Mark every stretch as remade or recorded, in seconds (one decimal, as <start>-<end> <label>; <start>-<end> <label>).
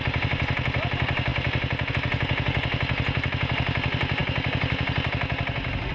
0.0-5.9 recorded